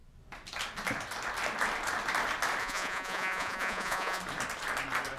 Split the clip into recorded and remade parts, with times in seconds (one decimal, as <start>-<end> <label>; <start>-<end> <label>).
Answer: 0.0-2.6 recorded; 2.6-4.2 remade; 4.2-5.2 recorded